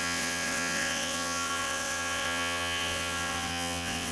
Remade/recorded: remade